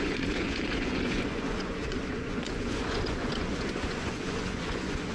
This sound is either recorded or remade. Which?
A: remade